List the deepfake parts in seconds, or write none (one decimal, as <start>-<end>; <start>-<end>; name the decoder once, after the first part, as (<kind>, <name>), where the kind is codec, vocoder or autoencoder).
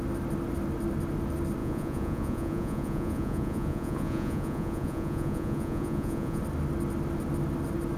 1.6-6.4 (vocoder, Vocos)